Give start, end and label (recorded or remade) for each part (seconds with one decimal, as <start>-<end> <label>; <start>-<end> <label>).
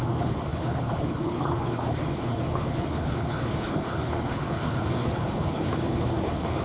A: 0.0-6.6 remade